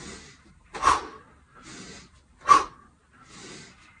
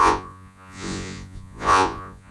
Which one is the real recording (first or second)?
first